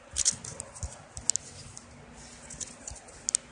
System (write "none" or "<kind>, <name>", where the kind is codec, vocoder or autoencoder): none